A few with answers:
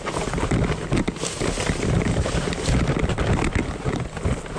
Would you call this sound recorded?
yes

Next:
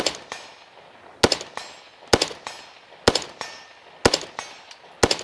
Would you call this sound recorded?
yes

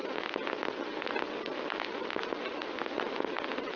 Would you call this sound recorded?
yes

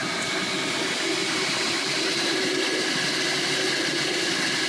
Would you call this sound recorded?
yes